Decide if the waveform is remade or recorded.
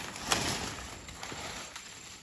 recorded